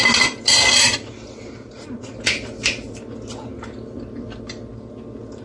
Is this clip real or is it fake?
real